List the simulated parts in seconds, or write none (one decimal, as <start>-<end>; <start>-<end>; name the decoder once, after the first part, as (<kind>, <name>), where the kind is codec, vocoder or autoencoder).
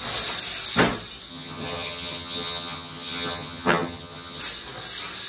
1.3-4.4 (vocoder, HiFi-GAN)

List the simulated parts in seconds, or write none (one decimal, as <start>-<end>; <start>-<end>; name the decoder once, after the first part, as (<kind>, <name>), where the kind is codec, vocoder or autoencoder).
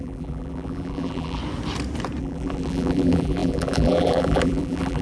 0.0-1.4 (vocoder, BigVGAN v2); 2.2-5.0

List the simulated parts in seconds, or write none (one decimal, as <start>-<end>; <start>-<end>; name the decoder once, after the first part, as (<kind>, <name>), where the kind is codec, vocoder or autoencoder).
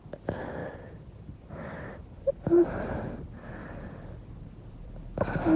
0.6-2.7 (vocoder, BigVGAN v2); 3.6-5.6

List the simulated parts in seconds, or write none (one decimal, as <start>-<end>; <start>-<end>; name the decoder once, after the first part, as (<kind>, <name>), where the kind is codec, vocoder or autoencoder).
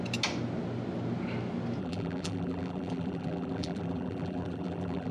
1.8-5.1 (vocoder, BigVGAN v2)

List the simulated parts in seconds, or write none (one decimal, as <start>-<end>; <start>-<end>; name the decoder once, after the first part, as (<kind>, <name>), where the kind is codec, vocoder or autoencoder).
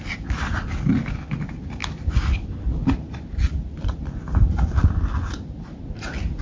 none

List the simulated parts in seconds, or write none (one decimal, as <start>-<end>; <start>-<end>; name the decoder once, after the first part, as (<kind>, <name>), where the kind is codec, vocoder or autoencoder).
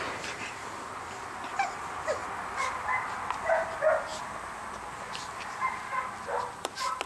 2.2-2.8 (vocoder, BigVGAN v2)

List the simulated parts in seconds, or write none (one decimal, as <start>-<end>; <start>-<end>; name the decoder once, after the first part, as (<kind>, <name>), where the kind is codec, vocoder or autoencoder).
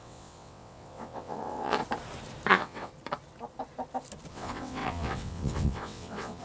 0.0-1.8 (vocoder, WaveNeXt); 2.5-2.9; 4.3-6.4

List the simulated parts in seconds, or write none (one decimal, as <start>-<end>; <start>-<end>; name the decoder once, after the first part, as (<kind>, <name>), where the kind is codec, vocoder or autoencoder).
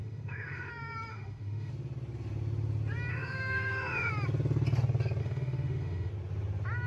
0.0-0.7 (autoencoder, DAC-VAE); 1.1-1.7; 3.1-4.1; 5.2-6.1